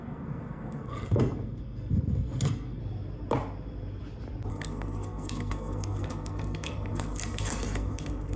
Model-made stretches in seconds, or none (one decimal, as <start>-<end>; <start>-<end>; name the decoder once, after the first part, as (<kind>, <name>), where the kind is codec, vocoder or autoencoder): 0.0-2.8 (codec, SNAC); 4.5-8.4